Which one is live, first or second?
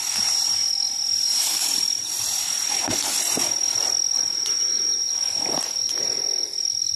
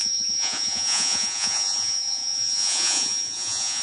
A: first